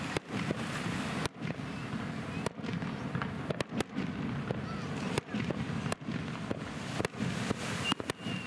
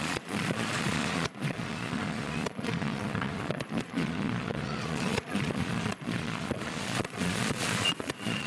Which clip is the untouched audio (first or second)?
first